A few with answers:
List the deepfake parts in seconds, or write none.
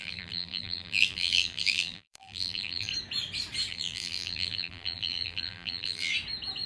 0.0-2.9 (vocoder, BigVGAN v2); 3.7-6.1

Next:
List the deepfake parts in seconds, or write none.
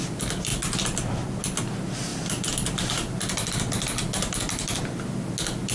none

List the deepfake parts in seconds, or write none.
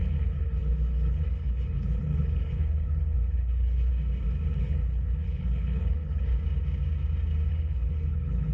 0.0-3.9 (codec, HILCodec); 4.6-6.3; 7.5-8.5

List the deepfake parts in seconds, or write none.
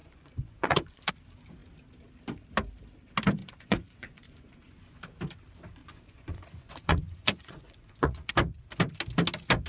0.0-1.1 (vocoder, Vocos); 3.4-5.0; 5.8-8.3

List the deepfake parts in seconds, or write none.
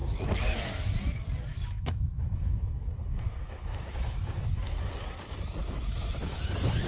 1.5-4.9 (autoencoder, DAC-VAE); 5.6-6.4